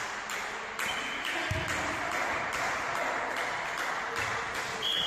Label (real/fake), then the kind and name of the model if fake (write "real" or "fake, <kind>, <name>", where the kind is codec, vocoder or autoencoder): real